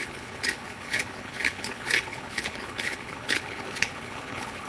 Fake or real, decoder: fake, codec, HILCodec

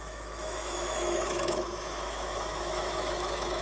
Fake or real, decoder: fake, autoencoder, DAC-VAE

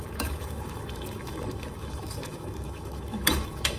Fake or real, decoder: fake, autoencoder, DAC-VAE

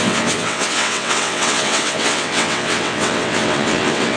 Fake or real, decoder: fake, vocoder, WaveNeXt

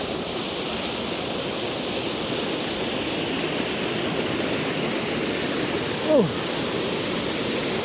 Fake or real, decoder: real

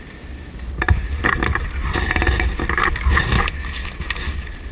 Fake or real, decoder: real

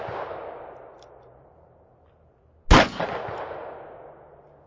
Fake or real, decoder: real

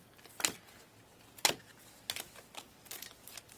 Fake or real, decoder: real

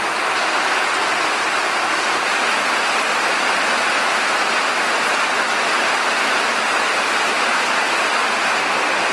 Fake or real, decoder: real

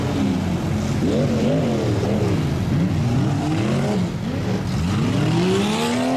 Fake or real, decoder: real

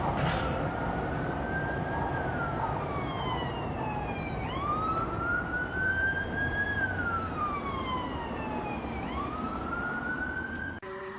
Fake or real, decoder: fake, vocoder, BigVGAN v2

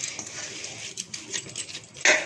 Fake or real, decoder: real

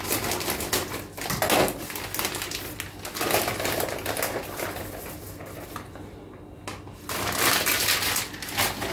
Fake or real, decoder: real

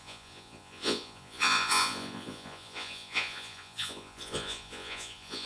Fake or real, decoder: fake, vocoder, Vocos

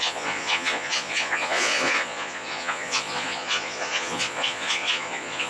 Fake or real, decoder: fake, vocoder, Vocos